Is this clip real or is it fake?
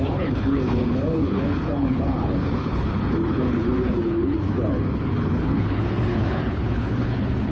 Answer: fake